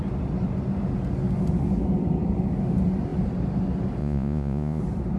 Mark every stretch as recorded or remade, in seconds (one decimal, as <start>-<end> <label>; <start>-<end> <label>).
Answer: 0.0-4.0 recorded; 4.0-4.8 remade; 4.8-5.2 recorded